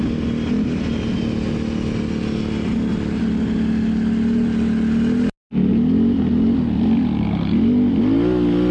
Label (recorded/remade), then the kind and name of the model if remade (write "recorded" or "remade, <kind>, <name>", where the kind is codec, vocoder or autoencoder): recorded